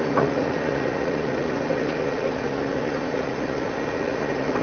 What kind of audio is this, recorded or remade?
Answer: remade